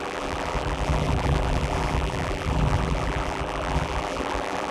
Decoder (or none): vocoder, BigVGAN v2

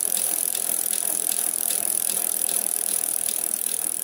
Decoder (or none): vocoder, BigVGAN v2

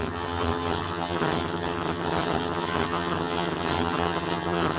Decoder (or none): vocoder, HiFi-GAN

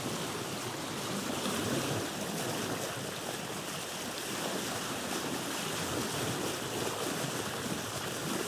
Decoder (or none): none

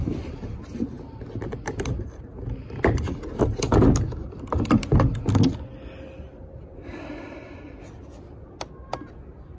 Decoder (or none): none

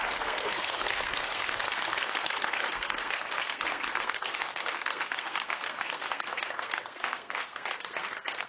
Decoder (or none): codec, SNAC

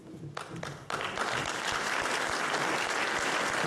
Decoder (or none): none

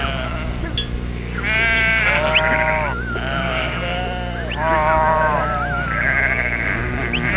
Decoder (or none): none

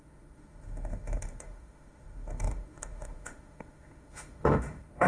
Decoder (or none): autoencoder, DAC-VAE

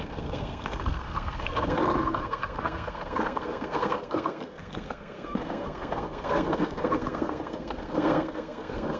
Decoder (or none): codec, SNAC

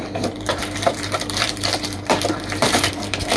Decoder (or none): vocoder, BigVGAN v2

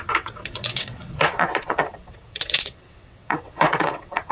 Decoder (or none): vocoder, WaveNeXt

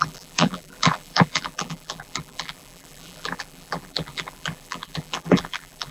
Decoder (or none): vocoder, BigVGAN v2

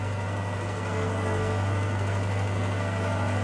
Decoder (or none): codec, SNAC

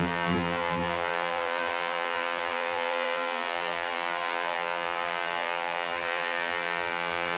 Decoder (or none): vocoder, BigVGAN v2